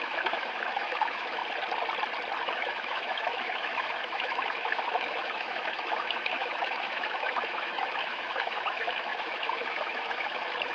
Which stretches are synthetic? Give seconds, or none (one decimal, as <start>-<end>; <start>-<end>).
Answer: 0.0-1.4; 2.4-10.7